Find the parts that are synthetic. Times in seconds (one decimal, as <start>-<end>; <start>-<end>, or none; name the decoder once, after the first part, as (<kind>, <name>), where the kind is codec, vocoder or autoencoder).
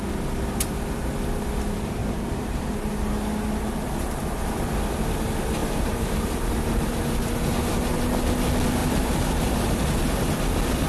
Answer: 2.0-2.6 (vocoder, BigVGAN v2); 5.6-7.0; 8.8-9.8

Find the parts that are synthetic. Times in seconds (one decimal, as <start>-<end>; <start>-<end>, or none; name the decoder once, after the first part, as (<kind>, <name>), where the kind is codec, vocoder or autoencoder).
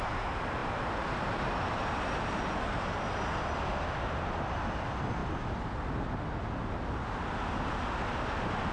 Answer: 0.6-2.5 (vocoder, BigVGAN v2)